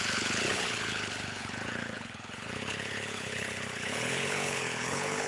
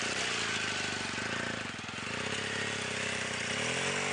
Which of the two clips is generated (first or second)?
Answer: first